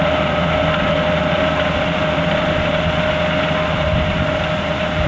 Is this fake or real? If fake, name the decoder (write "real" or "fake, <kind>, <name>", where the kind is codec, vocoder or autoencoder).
fake, vocoder, BigVGAN v2